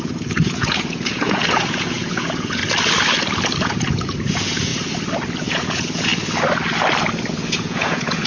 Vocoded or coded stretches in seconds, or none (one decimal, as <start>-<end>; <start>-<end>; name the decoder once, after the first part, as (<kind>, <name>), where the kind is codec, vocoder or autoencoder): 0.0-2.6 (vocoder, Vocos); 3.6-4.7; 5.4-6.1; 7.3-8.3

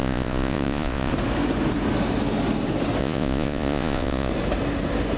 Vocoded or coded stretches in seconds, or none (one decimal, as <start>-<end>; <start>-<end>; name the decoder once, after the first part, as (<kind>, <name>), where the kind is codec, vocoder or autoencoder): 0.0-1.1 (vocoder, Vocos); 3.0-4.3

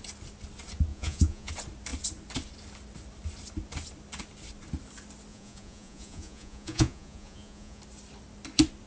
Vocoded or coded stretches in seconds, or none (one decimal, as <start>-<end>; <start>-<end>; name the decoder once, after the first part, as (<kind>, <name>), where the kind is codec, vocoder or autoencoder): 0.9-1.5 (vocoder, Vocos); 5.3-7.8